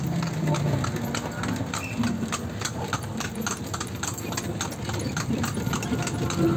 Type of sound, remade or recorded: recorded